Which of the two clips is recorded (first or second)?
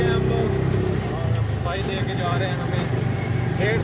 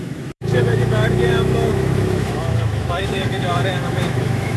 first